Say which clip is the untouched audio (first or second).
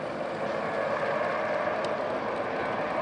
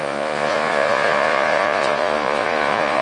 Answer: first